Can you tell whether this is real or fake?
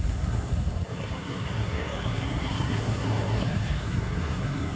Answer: fake